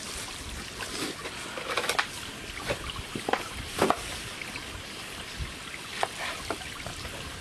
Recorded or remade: recorded